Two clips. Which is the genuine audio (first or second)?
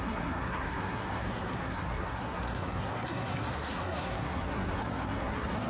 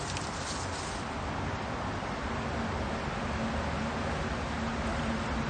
second